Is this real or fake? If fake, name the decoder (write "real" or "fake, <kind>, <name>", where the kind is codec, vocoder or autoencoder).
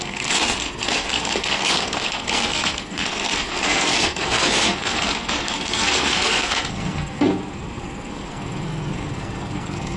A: fake, codec, SNAC